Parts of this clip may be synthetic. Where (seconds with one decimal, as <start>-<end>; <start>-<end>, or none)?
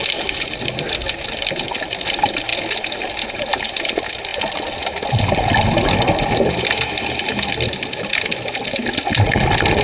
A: none